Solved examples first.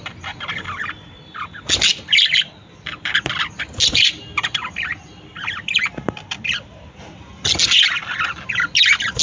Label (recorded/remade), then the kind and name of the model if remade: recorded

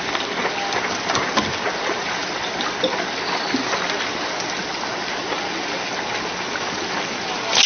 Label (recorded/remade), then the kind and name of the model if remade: recorded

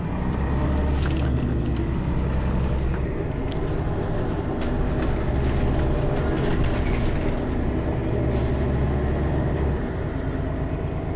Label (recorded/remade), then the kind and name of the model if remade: recorded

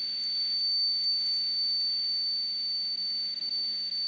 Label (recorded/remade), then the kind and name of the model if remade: recorded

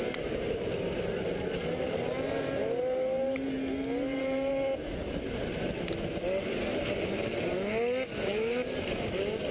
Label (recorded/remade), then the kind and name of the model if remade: recorded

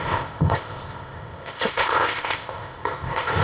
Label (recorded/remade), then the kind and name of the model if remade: remade, codec, ZipCodec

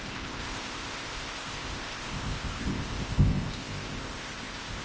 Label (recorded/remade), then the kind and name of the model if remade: remade, codec, ZipCodec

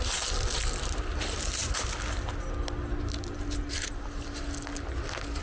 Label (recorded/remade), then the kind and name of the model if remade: recorded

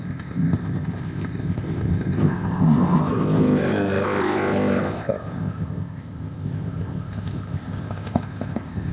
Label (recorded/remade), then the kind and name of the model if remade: remade, codec, ZipCodec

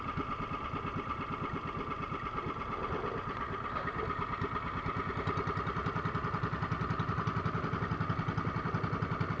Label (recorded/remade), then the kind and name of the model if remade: recorded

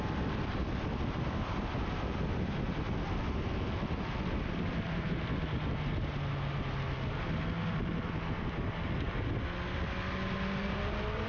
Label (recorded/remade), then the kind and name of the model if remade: recorded